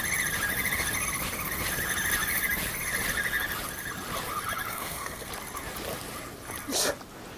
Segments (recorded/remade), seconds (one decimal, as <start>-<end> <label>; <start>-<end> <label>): 0.0-4.7 recorded; 4.7-5.3 remade; 5.3-7.4 recorded